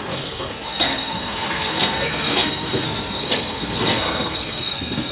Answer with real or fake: fake